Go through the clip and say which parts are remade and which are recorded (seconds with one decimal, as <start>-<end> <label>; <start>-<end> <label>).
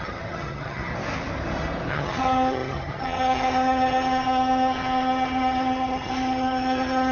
0.0-0.9 remade; 0.9-1.9 recorded; 1.9-7.1 remade